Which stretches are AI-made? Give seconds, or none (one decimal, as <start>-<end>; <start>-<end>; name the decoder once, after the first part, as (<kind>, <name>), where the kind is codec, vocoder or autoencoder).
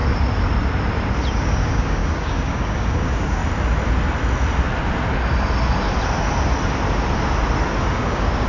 1.3-3.4 (codec, DAC); 7.8-8.5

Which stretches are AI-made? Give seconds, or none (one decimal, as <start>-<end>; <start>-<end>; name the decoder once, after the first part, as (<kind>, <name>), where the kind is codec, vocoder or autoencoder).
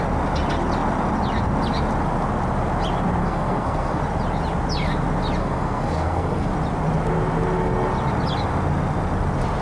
3.2-4.0 (codec, SNAC); 5.4-6.5